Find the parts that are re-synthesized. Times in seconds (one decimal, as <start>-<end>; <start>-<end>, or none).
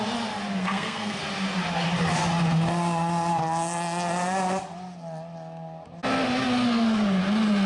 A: 0.6-1.2